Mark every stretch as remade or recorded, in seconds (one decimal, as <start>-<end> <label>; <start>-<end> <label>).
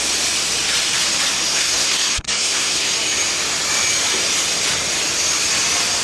0.0-1.5 recorded; 1.5-2.9 remade; 2.9-6.0 recorded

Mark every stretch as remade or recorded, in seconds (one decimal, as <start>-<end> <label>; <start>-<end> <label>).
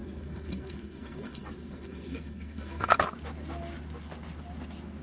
0.0-3.0 remade; 3.0-5.0 recorded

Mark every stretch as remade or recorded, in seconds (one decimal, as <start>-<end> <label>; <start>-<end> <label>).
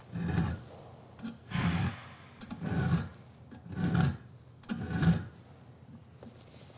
0.0-1.4 recorded; 1.4-1.9 remade; 1.9-6.8 recorded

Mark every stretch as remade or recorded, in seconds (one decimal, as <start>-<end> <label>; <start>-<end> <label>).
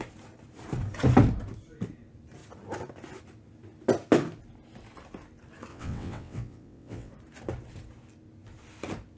0.0-5.7 recorded; 5.7-7.1 remade; 7.1-9.2 recorded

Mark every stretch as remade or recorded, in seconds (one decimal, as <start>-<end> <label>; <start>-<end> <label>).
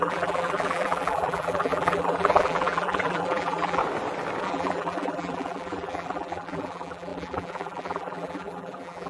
0.0-3.8 remade; 3.8-4.4 recorded; 4.4-9.1 remade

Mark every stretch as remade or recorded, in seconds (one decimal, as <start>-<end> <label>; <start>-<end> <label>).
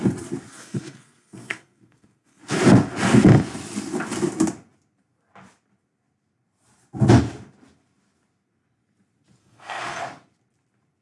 0.0-0.5 recorded; 0.5-2.4 remade; 2.4-9.4 recorded; 9.4-10.0 remade; 10.0-11.0 recorded